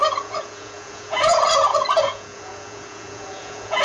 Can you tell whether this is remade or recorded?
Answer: remade